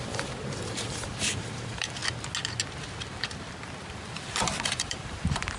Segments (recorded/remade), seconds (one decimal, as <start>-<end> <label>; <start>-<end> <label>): 0.0-2.0 remade; 2.0-4.6 recorded; 4.6-5.6 remade